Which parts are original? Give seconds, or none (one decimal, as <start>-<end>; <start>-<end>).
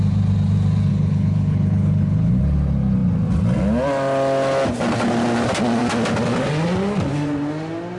0.0-0.9; 2.4-8.0